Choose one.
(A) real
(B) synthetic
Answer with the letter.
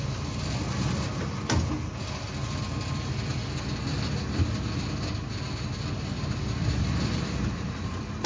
A